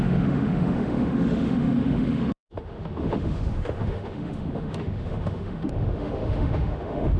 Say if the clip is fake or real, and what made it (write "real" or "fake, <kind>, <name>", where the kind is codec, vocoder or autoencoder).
fake, autoencoder, DAC-VAE